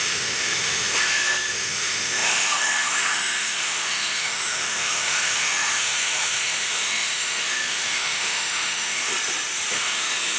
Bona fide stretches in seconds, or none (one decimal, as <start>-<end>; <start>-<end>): 9.1-9.7